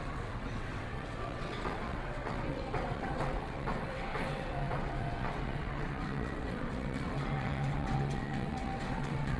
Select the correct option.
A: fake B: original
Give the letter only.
A